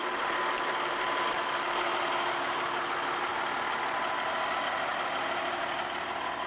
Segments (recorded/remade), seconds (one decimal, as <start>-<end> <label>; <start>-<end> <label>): 0.0-6.5 recorded